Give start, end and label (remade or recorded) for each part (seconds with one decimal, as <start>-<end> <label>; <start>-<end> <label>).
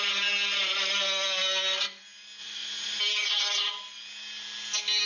0.0-2.4 recorded; 2.4-3.0 remade; 3.0-5.1 recorded